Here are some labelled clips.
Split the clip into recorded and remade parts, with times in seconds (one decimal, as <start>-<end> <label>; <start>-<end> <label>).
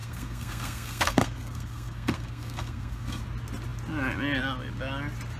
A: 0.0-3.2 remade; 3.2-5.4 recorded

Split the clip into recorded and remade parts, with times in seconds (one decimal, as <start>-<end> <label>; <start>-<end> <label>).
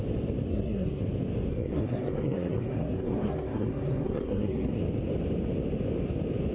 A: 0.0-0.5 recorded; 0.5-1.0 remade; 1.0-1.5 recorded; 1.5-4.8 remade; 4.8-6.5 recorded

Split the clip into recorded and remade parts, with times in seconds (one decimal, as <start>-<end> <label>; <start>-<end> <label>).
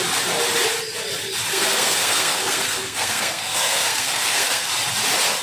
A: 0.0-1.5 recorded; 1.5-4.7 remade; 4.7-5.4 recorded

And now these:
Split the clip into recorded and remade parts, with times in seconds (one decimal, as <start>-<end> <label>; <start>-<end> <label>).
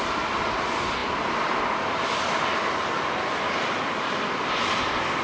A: 0.0-5.2 recorded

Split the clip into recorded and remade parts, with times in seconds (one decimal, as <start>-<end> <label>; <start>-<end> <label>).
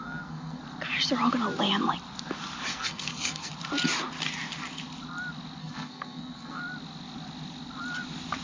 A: 0.0-0.6 remade; 0.6-2.7 recorded; 2.7-3.5 remade; 3.5-5.6 recorded; 5.6-6.6 remade; 6.6-8.4 recorded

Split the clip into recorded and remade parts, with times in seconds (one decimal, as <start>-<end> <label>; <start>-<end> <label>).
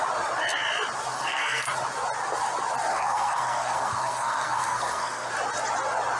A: 0.0-1.1 recorded; 1.1-1.7 remade; 1.7-2.9 recorded; 2.9-5.3 remade; 5.3-6.2 recorded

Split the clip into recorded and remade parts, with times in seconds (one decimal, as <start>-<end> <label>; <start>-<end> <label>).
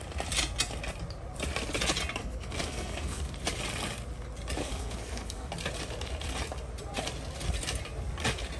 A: 0.0-2.2 recorded; 2.2-3.3 remade; 3.3-4.6 recorded; 4.6-5.5 remade; 5.5-8.6 recorded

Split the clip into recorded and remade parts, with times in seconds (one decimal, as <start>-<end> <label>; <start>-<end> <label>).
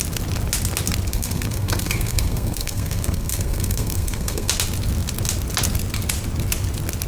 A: 0.0-1.1 recorded; 1.1-4.5 remade; 4.5-7.1 recorded